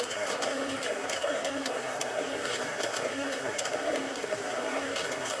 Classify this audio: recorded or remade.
remade